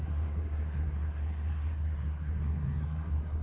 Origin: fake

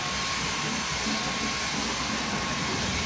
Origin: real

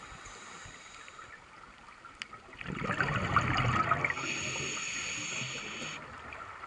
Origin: real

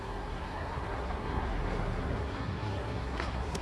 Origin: fake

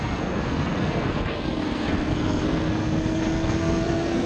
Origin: fake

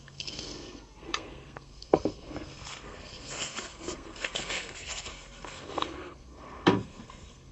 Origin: fake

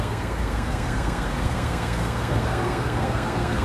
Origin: fake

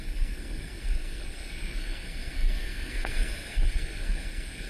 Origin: fake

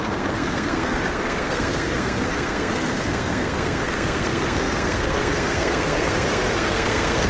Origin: fake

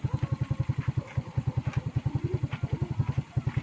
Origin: real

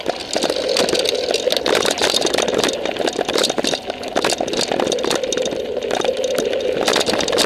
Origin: real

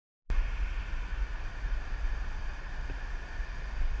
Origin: real